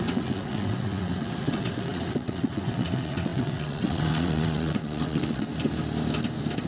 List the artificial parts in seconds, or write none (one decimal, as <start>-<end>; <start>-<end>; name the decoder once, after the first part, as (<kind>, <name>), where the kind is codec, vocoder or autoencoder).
0.0-5.5 (vocoder, WaveNeXt)